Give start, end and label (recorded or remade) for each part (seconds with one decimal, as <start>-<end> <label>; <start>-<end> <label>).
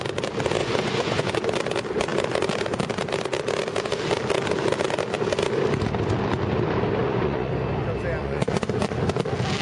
0.0-0.6 recorded; 0.6-1.3 remade; 1.3-7.0 recorded; 7.0-7.5 remade; 7.5-8.2 recorded; 8.2-9.0 remade; 9.0-9.6 recorded